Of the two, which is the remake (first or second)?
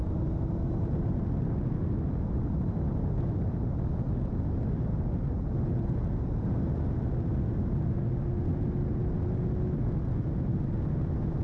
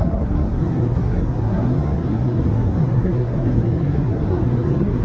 second